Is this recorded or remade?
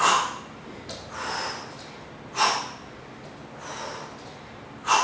recorded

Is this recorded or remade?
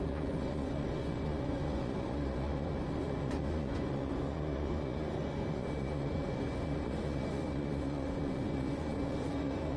remade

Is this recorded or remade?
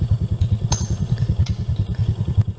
remade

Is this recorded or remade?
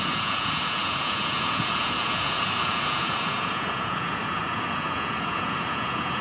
remade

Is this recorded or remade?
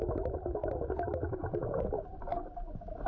recorded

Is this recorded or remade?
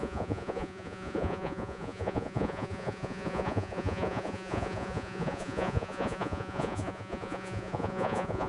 remade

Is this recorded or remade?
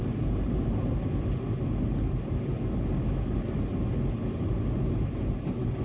recorded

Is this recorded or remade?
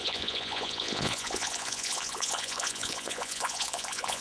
remade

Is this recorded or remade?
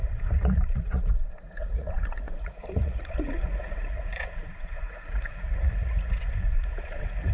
remade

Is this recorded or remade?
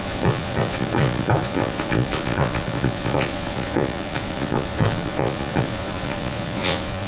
remade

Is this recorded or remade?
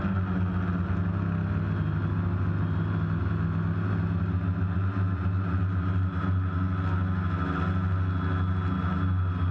recorded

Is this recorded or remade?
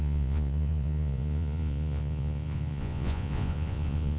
remade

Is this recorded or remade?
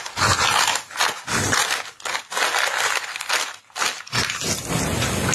recorded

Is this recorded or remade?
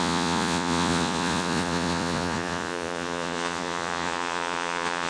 remade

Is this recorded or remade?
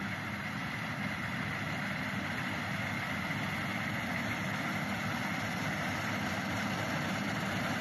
recorded